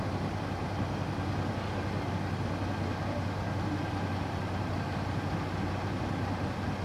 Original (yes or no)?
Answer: yes